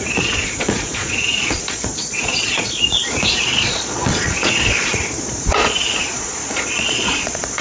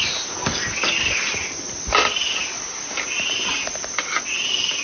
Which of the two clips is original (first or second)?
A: second